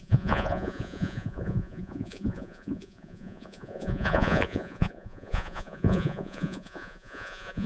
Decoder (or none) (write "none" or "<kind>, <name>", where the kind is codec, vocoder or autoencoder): vocoder, Vocos